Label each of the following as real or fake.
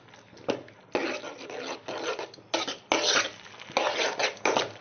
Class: real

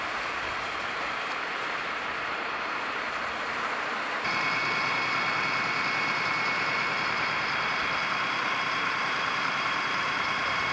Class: fake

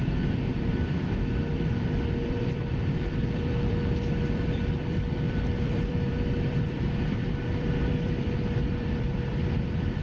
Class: fake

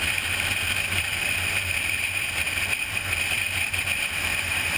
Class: fake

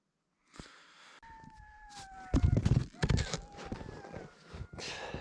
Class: real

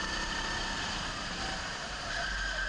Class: real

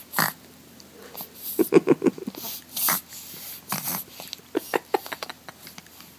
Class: real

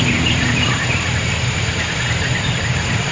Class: fake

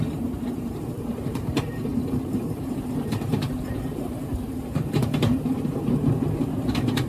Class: fake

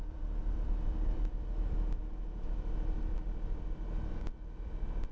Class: fake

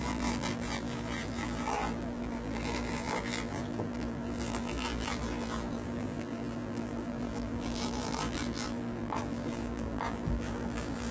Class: fake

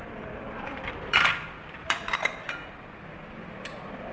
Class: fake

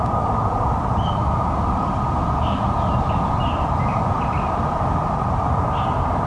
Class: fake